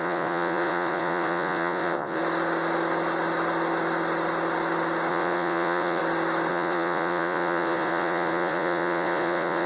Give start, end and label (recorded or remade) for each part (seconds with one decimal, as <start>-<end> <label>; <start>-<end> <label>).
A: 0.0-2.2 remade; 2.2-5.1 recorded; 5.1-6.0 remade; 6.0-6.5 recorded; 6.5-9.7 remade